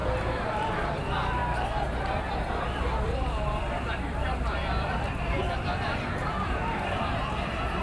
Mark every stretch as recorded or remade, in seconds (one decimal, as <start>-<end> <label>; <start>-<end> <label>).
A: 0.0-0.7 recorded; 0.7-1.4 remade; 1.4-2.0 recorded; 2.0-7.8 remade